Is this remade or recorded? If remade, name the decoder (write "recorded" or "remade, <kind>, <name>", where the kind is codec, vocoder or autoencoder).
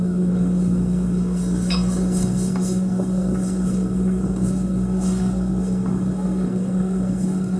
remade, codec, SNAC